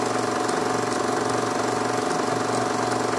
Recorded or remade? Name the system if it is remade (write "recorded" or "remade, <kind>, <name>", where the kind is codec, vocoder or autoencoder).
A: recorded